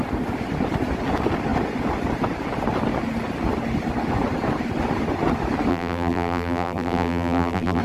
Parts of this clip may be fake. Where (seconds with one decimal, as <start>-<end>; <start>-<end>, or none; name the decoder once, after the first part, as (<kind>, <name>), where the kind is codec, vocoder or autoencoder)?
5.7-7.8 (vocoder, BigVGAN v2)